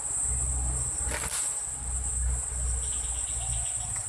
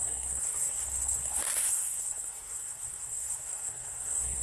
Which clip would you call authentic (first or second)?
first